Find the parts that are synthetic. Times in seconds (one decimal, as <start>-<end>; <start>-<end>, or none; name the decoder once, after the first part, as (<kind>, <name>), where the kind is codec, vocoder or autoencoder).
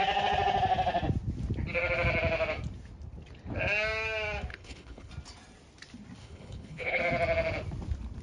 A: 4.5-5.1 (codec, HILCodec); 6.2-7.0